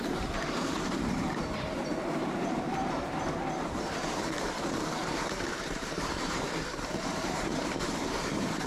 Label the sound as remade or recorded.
remade